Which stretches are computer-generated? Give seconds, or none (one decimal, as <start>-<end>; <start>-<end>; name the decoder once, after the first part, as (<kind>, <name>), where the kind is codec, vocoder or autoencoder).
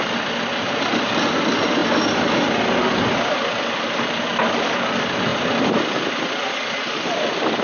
none